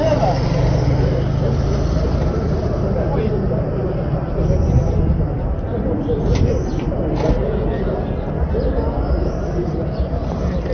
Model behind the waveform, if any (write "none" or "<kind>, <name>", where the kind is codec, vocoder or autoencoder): none